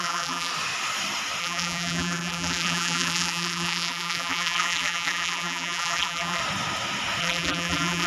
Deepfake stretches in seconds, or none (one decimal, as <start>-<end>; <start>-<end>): 0.0-0.5; 1.4-6.4; 7.2-8.1

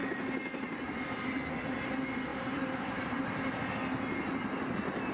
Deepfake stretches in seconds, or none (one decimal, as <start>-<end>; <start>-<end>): 2.3-3.1